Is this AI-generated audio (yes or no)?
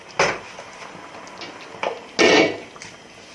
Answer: no